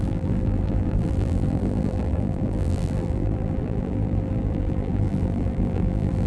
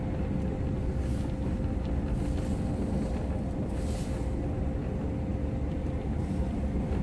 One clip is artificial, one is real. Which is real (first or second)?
second